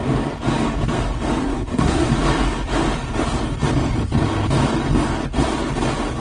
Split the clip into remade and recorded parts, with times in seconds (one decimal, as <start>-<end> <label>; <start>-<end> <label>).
0.0-1.4 recorded; 1.4-2.1 remade; 2.1-6.2 recorded